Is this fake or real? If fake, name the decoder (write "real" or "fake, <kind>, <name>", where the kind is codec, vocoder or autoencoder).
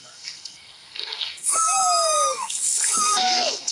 fake, codec, SNAC